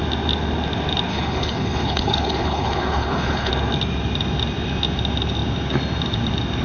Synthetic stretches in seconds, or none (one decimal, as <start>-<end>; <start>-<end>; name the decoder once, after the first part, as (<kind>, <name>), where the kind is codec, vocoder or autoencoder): 1.1-3.5 (codec, HILCodec)